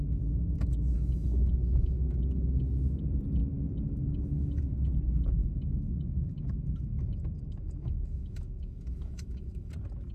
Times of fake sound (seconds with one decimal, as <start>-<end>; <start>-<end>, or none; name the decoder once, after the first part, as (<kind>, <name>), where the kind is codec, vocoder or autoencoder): 0.0-2.2 (autoencoder, DAC-VAE); 3.4-4.7; 5.4-9.7